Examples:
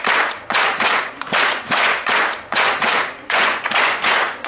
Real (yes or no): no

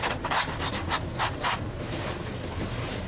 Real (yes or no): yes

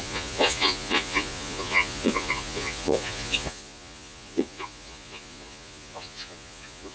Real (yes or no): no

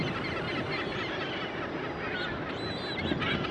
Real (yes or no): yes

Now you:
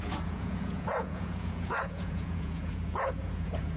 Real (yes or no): no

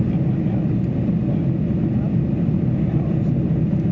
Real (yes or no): yes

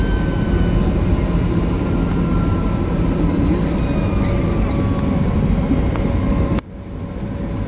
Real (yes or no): yes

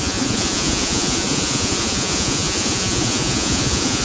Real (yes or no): no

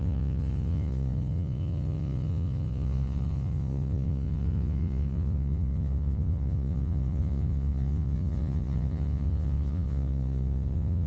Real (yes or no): no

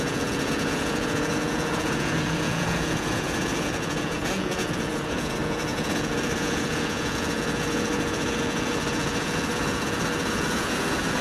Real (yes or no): no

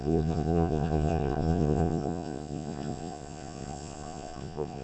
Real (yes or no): no